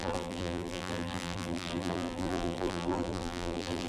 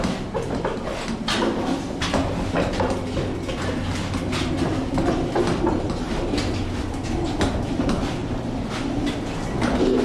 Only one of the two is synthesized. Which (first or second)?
first